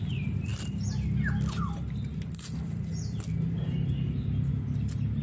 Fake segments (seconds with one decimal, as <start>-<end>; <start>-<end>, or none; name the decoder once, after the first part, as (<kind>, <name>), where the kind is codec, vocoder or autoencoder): none